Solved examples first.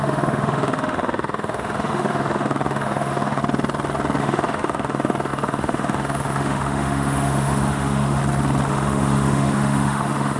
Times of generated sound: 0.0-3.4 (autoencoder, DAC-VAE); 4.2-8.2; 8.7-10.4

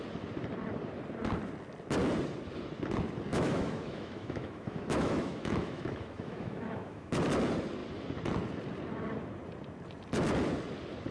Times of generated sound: 3.3-7.1 (autoencoder, DAC-VAE)

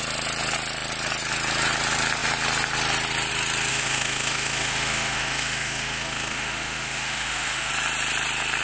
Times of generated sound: 3.7-7.7 (autoencoder, DAC-VAE)

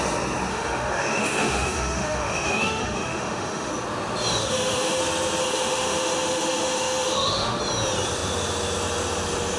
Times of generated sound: 0.5-3.7 (autoencoder, DAC-VAE); 4.4-5.0; 5.4-7.6

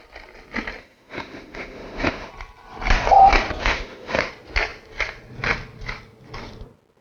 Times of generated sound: 0.8-2.3 (autoencoder, DAC-VAE); 3.6-4.3